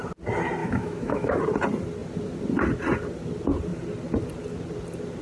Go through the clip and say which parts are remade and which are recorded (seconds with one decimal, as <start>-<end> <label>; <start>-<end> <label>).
0.0-0.6 recorded; 0.6-1.4 remade; 1.4-5.2 recorded